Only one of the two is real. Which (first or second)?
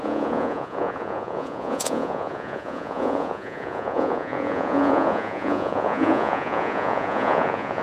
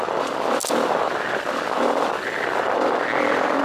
second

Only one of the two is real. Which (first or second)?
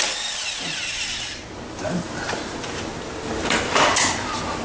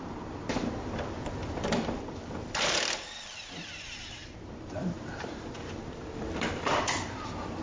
first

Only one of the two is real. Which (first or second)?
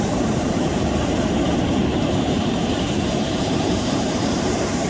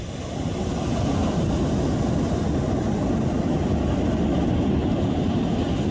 second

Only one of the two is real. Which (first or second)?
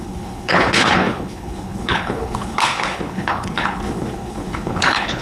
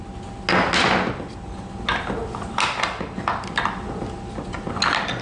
second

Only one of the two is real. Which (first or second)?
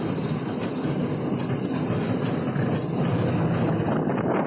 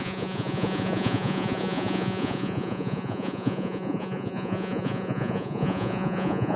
first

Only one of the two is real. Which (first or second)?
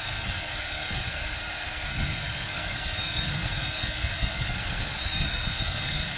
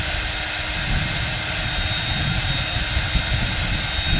second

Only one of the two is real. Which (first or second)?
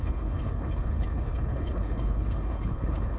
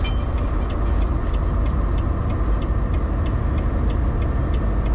second